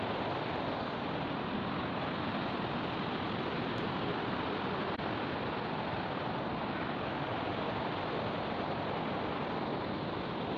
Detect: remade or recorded recorded